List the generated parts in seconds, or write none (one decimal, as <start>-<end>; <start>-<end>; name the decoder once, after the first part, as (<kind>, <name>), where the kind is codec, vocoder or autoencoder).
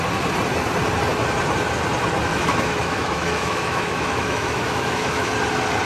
2.3-5.3 (autoencoder, DAC-VAE)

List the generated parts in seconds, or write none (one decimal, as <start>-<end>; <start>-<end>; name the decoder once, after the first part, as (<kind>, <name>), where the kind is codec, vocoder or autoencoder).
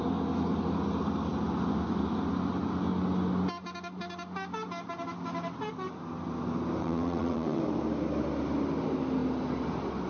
6.8-7.6 (vocoder, WaveNeXt)